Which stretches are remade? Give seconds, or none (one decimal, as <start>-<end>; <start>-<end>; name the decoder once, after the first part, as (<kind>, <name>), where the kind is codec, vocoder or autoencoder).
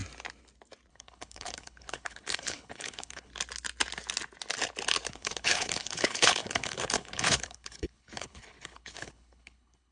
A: 0.9-3.3 (codec, HILCodec); 5.1-9.9